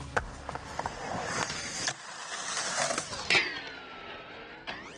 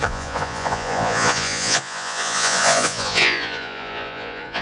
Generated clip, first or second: second